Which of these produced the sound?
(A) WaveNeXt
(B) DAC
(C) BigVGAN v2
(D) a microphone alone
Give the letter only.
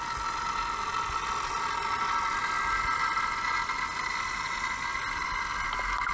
D